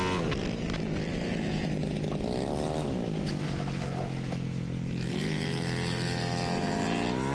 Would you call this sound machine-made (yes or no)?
no